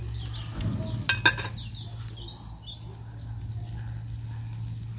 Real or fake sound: real